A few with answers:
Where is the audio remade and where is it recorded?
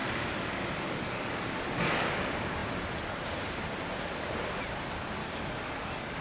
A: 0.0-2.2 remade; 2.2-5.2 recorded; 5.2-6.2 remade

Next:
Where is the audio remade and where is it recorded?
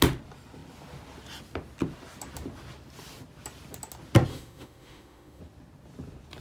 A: 0.0-4.3 recorded; 4.3-5.4 remade; 5.4-6.4 recorded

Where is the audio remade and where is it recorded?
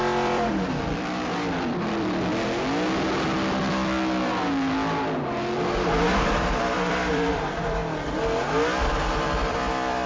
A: 0.0-2.3 remade; 2.3-6.4 recorded; 6.4-7.8 remade; 7.8-8.9 recorded; 8.9-10.1 remade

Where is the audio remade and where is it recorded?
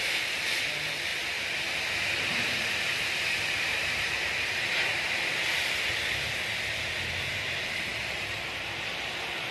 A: 0.0-1.1 remade; 1.1-2.2 recorded; 2.2-4.9 remade; 4.9-7.3 recorded; 7.3-9.5 remade